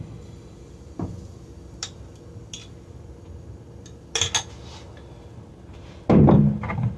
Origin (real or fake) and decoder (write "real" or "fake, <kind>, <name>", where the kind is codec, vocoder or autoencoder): real